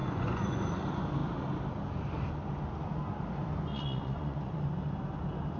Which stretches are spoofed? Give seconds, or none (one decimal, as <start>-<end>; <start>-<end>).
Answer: 0.0-0.6; 3.7-4.6